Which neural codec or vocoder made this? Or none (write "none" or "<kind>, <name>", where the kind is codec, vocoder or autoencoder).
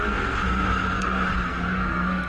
codec, SNAC